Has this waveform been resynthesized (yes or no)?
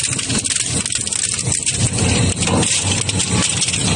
no